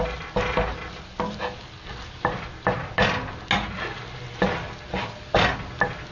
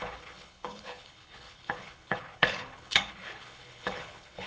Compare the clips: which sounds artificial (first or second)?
second